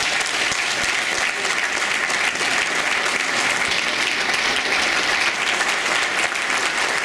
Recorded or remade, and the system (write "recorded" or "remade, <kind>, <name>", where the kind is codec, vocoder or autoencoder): recorded